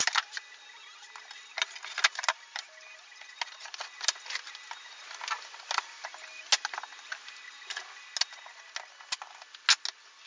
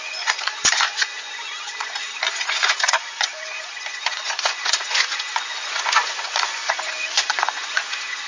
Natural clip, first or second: first